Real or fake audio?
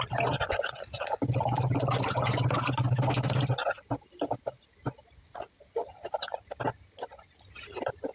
real